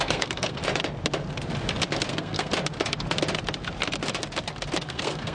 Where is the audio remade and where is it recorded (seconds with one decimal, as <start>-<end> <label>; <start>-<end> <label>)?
0.0-0.6 remade; 0.6-2.1 recorded; 2.1-2.5 remade; 2.5-4.8 recorded; 4.8-5.3 remade